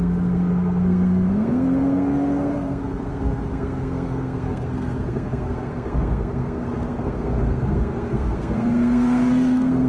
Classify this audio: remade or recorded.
remade